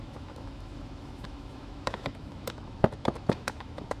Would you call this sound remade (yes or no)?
yes